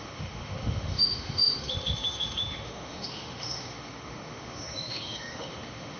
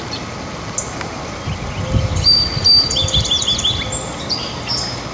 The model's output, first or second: first